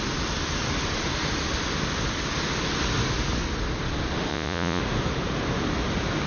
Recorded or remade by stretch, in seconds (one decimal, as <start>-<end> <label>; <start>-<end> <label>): 0.0-4.3 recorded; 4.3-4.8 remade; 4.8-6.3 recorded